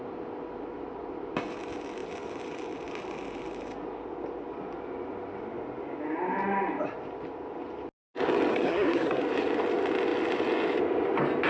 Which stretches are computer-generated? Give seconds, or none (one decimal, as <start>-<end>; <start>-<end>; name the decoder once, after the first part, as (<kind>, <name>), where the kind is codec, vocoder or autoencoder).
8.5-9.2 (codec, SNAC)